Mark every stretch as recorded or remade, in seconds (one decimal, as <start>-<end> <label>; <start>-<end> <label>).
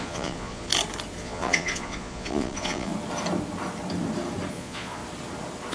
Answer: 0.0-0.7 remade; 0.7-1.2 recorded; 1.2-2.9 remade; 2.9-4.5 recorded; 4.5-5.0 remade; 5.0-5.7 recorded